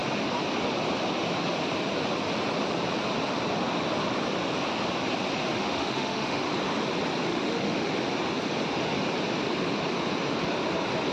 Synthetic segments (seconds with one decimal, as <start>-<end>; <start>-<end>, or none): 5.5-6.5; 7.3-7.9